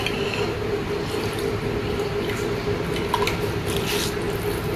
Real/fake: real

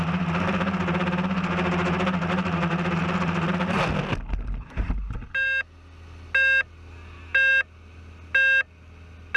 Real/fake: real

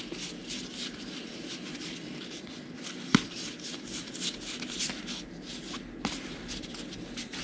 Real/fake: real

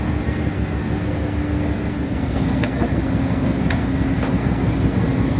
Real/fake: fake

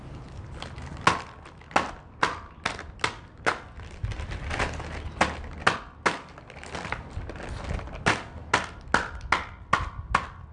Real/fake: real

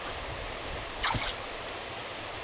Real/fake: real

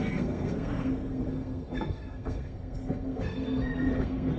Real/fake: fake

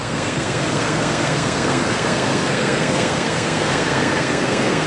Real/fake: fake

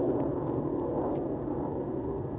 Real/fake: real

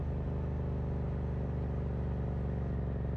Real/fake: real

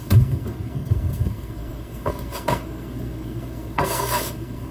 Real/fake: fake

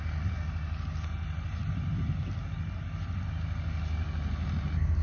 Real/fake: real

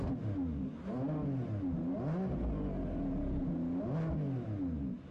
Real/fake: real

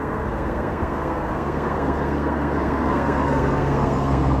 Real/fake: fake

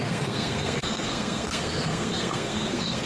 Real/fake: fake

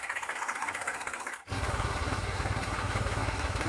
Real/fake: fake